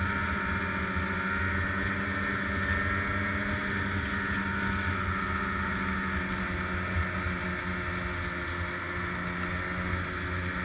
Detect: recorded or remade recorded